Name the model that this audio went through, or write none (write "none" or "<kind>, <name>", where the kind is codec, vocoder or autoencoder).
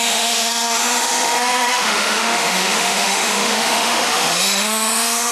autoencoder, DAC-VAE